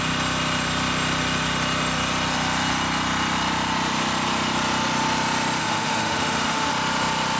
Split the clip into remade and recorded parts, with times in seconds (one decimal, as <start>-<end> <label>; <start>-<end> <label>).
0.0-5.6 recorded; 5.6-6.7 remade; 6.7-7.4 recorded